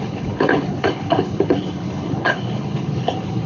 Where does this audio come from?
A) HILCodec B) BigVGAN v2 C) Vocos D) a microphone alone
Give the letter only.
A